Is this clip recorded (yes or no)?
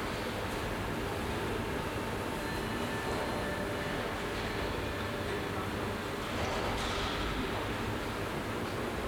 yes